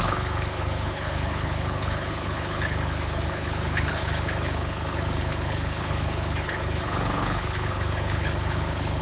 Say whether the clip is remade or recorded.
remade